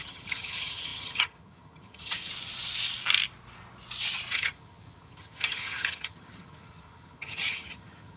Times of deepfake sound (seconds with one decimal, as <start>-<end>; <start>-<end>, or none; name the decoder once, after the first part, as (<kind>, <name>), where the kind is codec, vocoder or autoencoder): 0.0-2.3 (vocoder, HiFi-GAN); 4.3-8.2